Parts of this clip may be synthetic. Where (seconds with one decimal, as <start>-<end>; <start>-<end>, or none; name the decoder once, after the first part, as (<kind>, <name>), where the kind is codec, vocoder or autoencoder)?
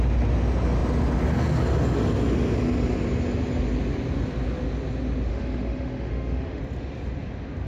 5.3-6.6 (autoencoder, DAC-VAE)